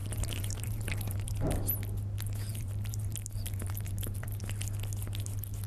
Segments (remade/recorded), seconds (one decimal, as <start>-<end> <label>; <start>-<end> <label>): 0.0-1.3 remade; 1.3-2.5 recorded; 2.5-4.4 remade; 4.4-5.7 recorded